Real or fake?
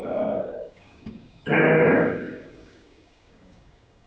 fake